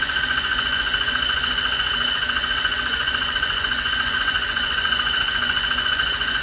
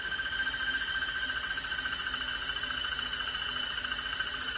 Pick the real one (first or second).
second